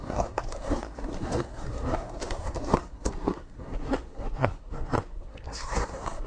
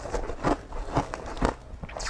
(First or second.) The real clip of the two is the second